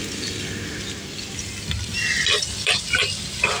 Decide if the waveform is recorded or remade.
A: recorded